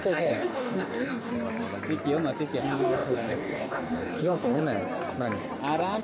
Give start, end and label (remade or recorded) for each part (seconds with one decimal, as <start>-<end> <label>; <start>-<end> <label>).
0.0-1.3 remade; 1.3-2.6 recorded; 2.6-4.6 remade; 4.6-6.0 recorded